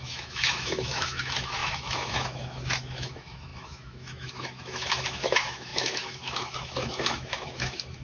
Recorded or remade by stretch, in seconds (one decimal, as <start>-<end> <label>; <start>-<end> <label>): 0.0-8.0 remade